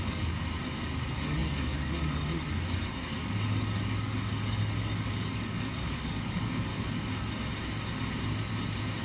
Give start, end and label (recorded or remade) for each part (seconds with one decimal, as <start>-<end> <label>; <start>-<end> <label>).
0.0-6.7 remade; 6.7-9.0 recorded